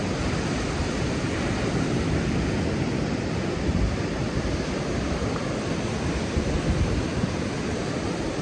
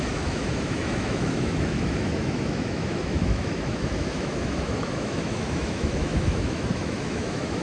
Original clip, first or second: first